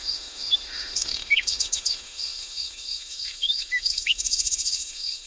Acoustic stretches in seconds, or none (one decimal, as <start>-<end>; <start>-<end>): none